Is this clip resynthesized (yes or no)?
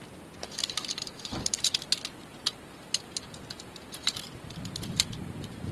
yes